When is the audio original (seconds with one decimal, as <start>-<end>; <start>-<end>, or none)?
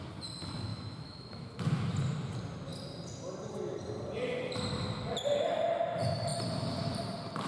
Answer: 0.0-0.7; 1.5-7.5